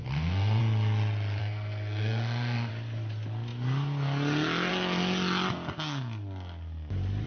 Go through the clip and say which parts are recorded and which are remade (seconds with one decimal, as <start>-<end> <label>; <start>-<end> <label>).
0.0-0.6 remade; 0.6-1.4 recorded; 1.4-2.7 remade; 2.7-7.3 recorded